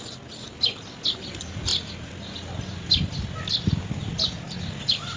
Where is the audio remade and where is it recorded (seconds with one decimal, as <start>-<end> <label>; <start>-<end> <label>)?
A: 0.0-5.2 recorded